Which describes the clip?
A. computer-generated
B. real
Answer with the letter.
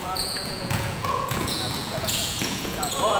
A